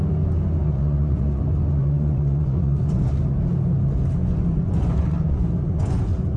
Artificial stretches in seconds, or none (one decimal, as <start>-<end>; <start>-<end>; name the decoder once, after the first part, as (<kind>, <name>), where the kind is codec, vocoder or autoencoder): 0.6-1.4 (vocoder, Vocos); 1.8-3.1; 4.2-6.0